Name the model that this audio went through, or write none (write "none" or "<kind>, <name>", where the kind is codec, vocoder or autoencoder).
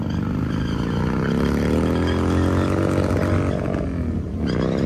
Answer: none